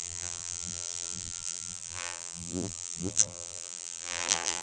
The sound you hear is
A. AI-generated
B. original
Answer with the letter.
A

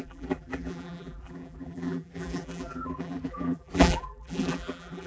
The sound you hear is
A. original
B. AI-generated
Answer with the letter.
B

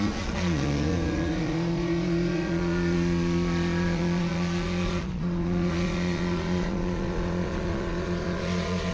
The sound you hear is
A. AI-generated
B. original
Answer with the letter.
A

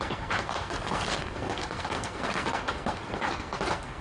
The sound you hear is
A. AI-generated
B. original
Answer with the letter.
A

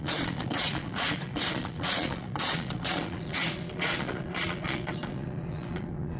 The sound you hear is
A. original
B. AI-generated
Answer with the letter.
B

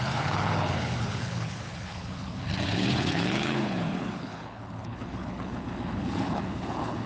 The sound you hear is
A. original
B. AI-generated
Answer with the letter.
B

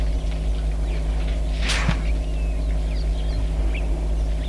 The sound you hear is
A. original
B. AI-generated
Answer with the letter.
A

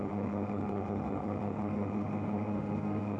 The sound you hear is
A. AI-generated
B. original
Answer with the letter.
A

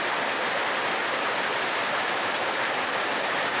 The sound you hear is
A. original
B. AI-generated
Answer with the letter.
A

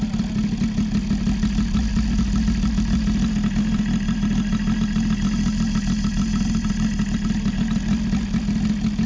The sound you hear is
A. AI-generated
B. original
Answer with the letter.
B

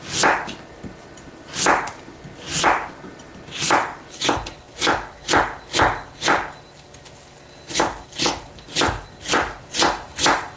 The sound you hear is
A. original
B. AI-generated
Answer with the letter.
A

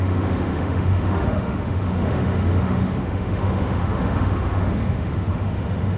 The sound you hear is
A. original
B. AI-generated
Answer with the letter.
B